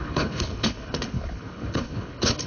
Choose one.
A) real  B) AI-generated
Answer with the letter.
B